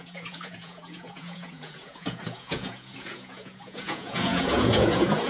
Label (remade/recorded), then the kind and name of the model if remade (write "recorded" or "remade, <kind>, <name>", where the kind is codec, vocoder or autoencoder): remade, vocoder, Vocos